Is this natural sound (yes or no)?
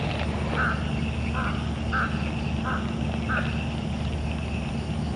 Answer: yes